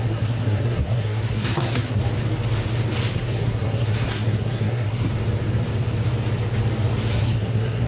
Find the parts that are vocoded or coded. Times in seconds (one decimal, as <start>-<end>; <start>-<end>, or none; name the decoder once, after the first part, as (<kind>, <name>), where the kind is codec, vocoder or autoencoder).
0.0-2.0 (codec, SNAC); 3.1-5.1; 7.1-7.9